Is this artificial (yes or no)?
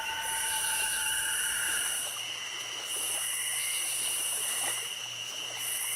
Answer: yes